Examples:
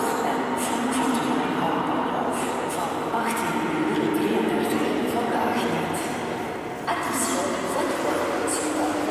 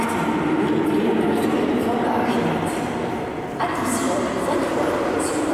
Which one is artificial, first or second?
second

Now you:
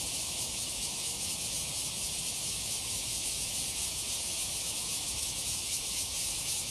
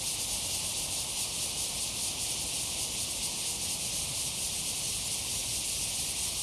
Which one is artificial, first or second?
first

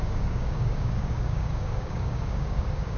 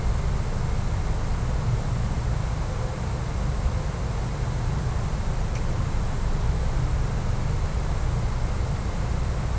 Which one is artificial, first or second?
first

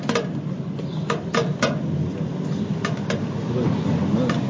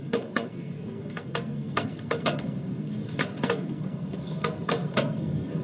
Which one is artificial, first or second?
second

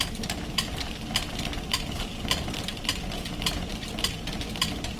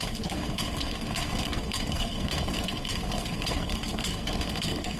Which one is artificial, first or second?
second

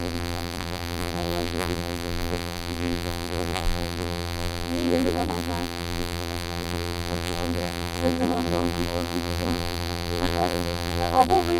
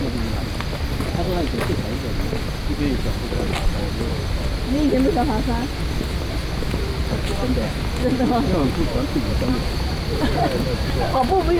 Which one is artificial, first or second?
first